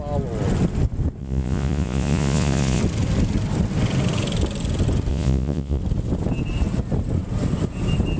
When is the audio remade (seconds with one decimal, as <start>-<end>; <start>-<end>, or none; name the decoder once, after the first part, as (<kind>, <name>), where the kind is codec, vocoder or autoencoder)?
1.2-2.8 (vocoder, Vocos); 5.1-5.8